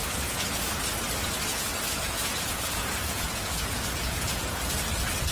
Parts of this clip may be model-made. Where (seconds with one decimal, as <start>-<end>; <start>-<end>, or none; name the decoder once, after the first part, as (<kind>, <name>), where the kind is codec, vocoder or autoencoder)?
0.0-0.8 (vocoder, Vocos); 1.5-4.7